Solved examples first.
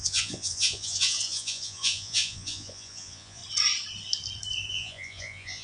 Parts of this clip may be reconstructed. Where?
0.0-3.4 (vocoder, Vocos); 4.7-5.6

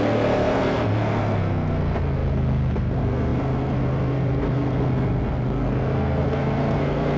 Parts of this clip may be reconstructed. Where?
0.0-7.2 (codec, SNAC)

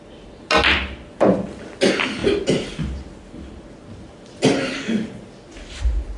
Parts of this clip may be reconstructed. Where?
none

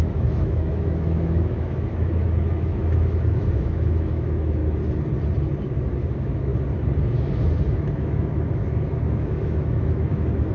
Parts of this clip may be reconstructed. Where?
0.0-4.6 (autoencoder, DAC-VAE); 5.6-6.5; 7.0-10.5

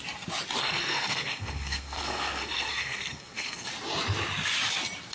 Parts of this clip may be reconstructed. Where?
0.6-3.7 (codec, SNAC)

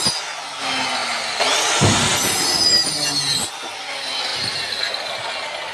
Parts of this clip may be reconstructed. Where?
none

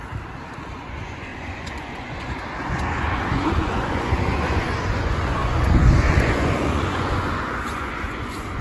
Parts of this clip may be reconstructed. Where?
0.7-8.6 (vocoder, Vocos)